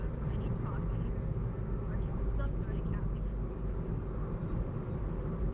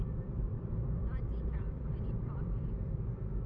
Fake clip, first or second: second